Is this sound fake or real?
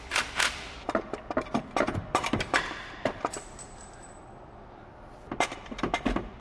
fake